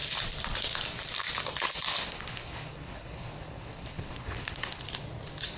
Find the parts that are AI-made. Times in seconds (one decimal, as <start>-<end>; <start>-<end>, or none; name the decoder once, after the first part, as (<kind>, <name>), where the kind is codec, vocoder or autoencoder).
1.9-4.8 (codec, HILCodec)